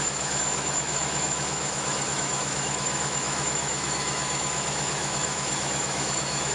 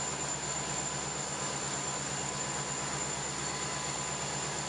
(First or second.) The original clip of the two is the second